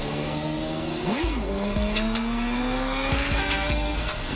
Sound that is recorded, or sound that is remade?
remade